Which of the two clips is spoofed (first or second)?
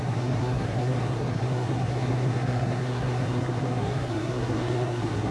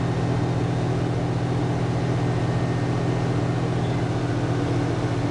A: first